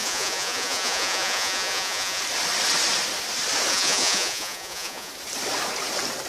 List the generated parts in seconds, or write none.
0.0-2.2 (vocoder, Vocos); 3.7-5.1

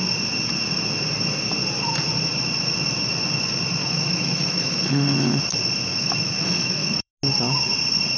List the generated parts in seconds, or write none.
3.8-5.4 (autoencoder, DAC-VAE); 5.9-7.1

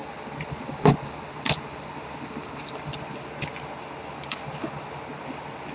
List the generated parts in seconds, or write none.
0.0-3.0 (vocoder, BigVGAN v2)

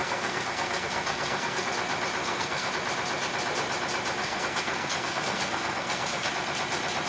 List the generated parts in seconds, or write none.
0.0-1.7 (codec, SNAC); 2.2-2.7; 4.2-6.3

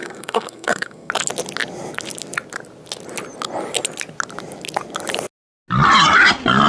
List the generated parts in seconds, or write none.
0.0-1.1 (codec, SNAC)

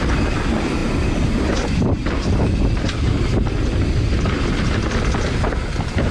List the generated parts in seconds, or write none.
none

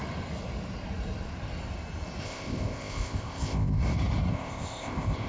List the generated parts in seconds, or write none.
2.2-3.8 (codec, ZipCodec); 4.3-5.3

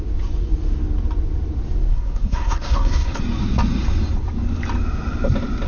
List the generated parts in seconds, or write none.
1.9-3.2 (codec, SNAC)